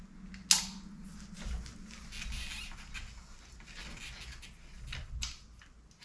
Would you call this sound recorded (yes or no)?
yes